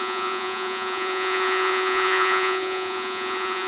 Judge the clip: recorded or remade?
remade